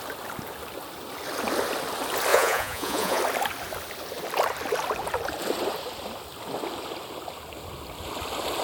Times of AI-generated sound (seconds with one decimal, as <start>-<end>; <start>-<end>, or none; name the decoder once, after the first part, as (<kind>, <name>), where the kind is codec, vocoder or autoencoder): 2.3-3.2 (vocoder, Vocos)